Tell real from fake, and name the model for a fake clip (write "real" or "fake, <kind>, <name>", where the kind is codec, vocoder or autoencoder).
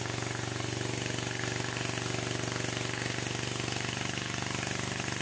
real